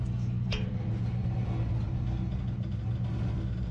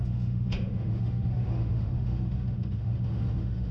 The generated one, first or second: second